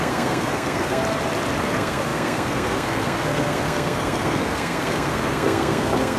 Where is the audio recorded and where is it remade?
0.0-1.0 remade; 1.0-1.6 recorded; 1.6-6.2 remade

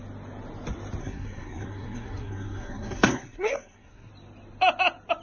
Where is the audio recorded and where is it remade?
0.0-1.0 recorded; 1.0-4.1 remade; 4.1-5.2 recorded

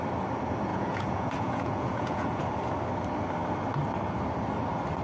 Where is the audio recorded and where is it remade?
0.0-0.7 recorded; 0.7-2.4 remade; 2.4-5.0 recorded

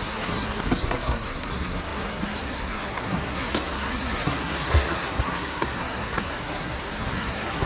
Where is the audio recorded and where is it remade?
0.0-7.7 remade

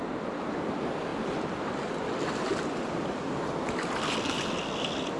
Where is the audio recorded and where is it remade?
0.0-5.2 recorded

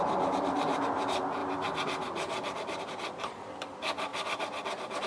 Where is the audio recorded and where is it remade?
0.0-1.4 remade; 1.4-2.8 recorded; 2.8-5.1 remade

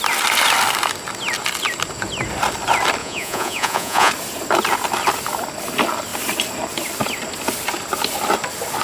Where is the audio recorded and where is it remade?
0.0-3.0 recorded; 3.0-4.1 remade; 4.1-8.8 recorded

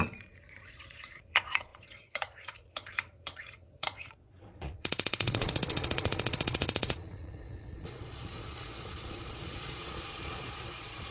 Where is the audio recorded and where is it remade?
0.0-11.1 remade